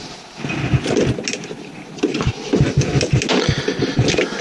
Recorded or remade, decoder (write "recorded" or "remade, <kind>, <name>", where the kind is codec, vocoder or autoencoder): recorded